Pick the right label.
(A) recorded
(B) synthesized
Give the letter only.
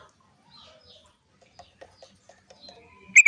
A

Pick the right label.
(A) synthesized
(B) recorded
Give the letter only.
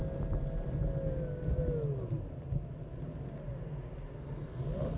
B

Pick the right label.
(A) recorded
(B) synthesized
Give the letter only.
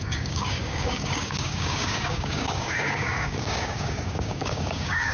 B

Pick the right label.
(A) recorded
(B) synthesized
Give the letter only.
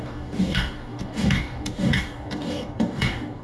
B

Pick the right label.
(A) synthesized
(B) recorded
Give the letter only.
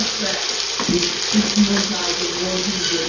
B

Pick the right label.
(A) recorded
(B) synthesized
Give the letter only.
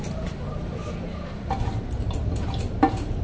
A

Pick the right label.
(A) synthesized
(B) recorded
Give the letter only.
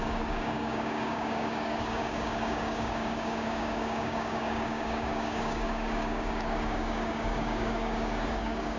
A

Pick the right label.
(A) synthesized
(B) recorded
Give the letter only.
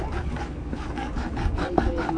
A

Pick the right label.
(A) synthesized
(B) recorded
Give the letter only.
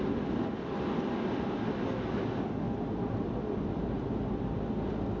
B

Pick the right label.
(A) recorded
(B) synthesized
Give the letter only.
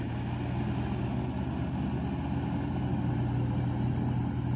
A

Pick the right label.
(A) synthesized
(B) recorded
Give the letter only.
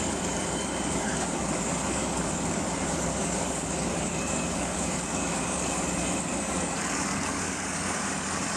A